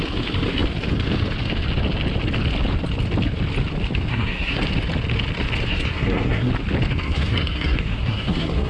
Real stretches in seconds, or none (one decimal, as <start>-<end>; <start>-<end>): 0.0-4.1; 4.6-5.7; 6.5-6.9